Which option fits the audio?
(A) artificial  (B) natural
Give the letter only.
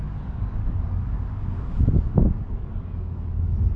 A